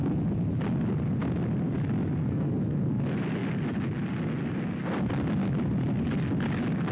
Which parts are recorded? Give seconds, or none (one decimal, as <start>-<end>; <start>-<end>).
0.0-2.2; 3.0-6.9